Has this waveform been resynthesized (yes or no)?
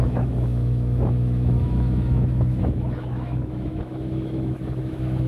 yes